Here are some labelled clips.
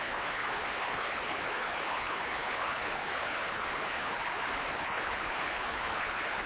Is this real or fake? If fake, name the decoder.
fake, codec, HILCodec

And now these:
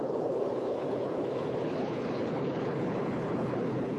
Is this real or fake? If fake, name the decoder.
fake, codec, HILCodec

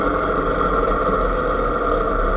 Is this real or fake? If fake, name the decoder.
real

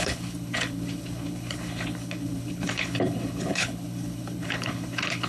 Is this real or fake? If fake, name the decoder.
fake, codec, HILCodec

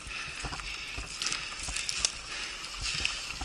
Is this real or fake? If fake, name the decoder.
real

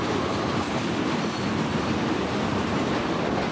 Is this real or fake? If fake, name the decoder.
real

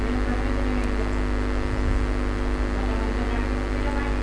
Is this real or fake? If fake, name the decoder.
real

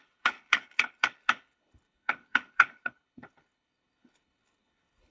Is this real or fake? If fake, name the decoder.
fake, codec, HILCodec